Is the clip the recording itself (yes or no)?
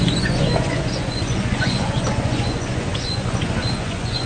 no